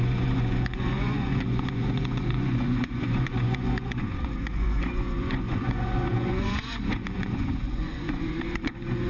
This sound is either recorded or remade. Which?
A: remade